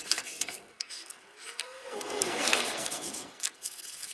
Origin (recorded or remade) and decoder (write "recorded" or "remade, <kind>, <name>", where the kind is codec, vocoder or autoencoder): remade, codec, SNAC